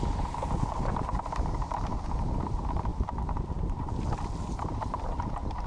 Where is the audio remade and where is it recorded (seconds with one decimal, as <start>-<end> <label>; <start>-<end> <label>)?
0.0-5.7 recorded